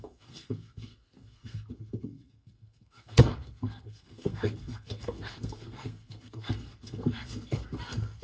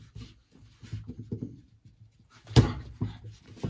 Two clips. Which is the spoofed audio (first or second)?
first